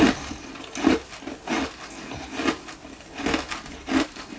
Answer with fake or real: real